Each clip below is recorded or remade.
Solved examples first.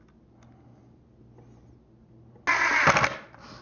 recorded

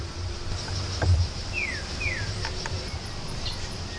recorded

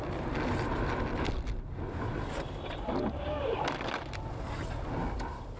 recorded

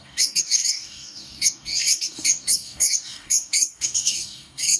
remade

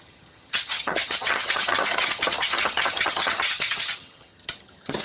remade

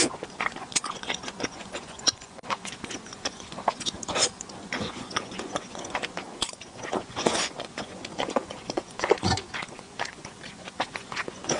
remade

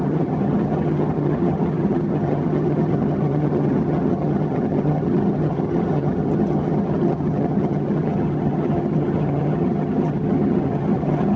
remade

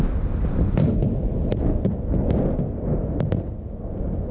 recorded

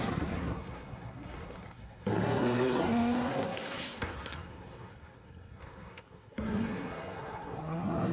remade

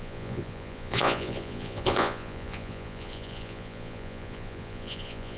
remade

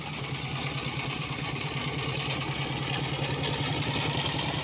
recorded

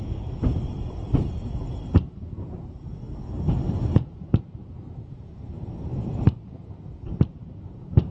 remade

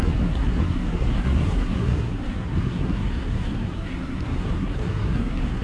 remade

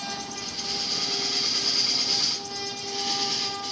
recorded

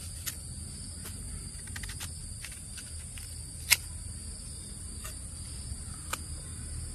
recorded